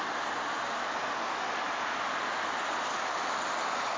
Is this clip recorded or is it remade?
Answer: recorded